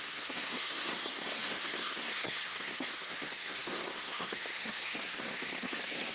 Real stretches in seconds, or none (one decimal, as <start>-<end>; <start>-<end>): none